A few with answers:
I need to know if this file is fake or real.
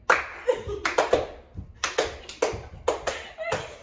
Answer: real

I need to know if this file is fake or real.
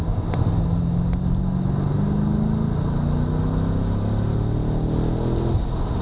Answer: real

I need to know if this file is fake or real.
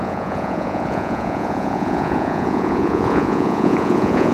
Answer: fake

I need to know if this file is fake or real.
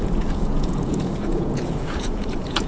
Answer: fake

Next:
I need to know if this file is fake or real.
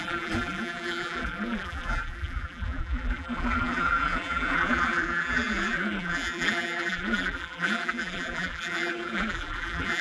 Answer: fake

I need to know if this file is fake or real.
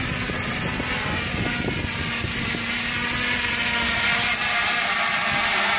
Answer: real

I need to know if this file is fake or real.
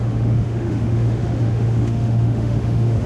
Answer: fake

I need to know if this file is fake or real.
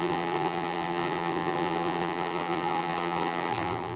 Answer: fake